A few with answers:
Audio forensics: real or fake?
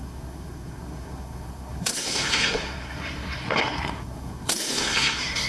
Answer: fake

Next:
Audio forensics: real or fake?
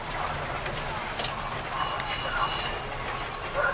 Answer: real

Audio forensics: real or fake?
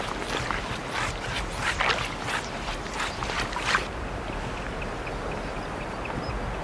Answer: real